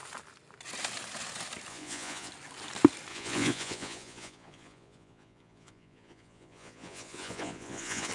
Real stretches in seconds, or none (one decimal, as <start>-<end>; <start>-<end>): 0.0-1.7; 2.3-3.1